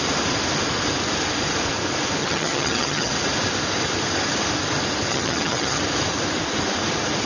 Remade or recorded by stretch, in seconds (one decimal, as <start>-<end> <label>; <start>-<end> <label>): 0.0-2.2 recorded; 2.2-3.1 remade; 3.1-5.1 recorded; 5.1-5.8 remade; 5.8-7.3 recorded